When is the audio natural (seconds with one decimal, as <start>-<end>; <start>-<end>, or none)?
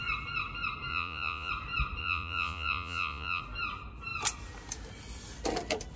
0.0-0.9; 1.5-2.0; 3.4-6.0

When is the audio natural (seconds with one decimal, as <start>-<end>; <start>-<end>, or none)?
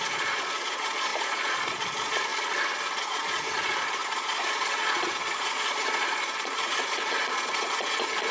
2.3-3.0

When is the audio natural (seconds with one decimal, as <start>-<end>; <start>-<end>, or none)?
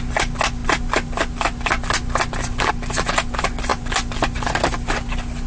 0.0-5.5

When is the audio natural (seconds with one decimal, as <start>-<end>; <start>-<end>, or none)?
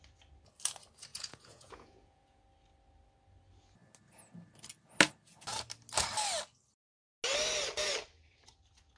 0.0-1.1; 2.4-9.0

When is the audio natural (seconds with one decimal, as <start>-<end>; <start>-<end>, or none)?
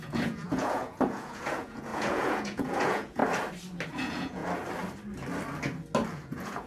3.2-3.9; 4.4-6.1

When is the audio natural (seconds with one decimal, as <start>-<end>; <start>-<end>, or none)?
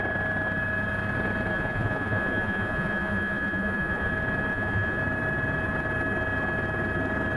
0.0-1.5; 4.1-4.5; 5.0-7.4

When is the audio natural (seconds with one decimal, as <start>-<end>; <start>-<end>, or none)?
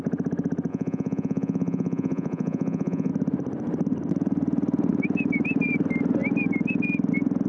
0.0-0.7; 3.1-7.5